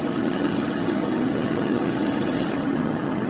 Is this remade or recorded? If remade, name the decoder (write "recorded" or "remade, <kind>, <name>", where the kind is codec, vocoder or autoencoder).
remade, vocoder, HiFi-GAN